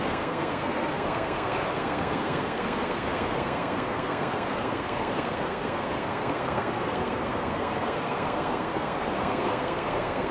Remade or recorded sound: remade